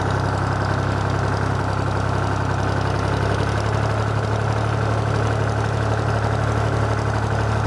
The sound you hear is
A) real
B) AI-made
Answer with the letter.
A